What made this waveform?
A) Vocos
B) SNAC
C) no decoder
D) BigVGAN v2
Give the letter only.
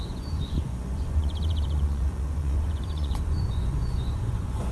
A